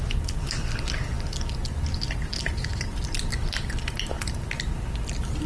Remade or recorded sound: recorded